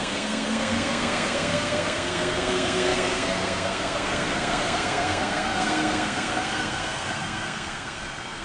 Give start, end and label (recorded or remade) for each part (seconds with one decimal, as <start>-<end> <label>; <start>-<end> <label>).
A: 0.0-8.4 remade